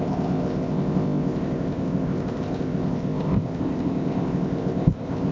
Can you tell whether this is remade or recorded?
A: remade